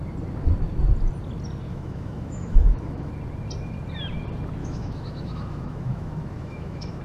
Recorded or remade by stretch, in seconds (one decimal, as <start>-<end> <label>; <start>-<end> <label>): 0.0-1.7 recorded; 1.7-3.1 remade; 3.1-4.6 recorded; 4.6-7.0 remade